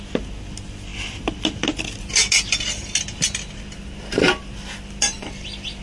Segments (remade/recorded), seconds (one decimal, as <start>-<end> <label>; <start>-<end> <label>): 0.0-5.8 recorded